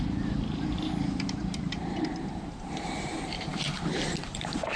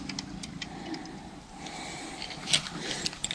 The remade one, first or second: first